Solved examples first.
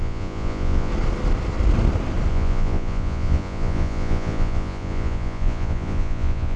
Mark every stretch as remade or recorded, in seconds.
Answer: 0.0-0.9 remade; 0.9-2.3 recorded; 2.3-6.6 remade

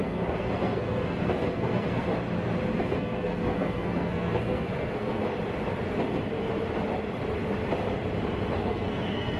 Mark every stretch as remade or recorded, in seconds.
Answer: 0.0-2.1 remade; 2.1-2.8 recorded; 2.8-5.2 remade; 5.2-8.6 recorded; 8.6-9.4 remade

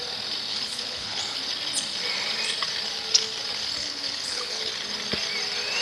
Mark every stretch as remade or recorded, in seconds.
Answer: 0.0-0.5 recorded; 0.5-1.4 remade; 1.4-3.8 recorded; 3.8-4.7 remade; 4.7-5.8 recorded

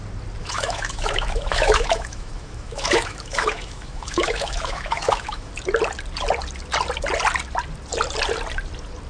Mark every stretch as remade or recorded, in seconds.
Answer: 0.0-0.4 recorded; 0.4-5.5 remade; 5.5-9.1 recorded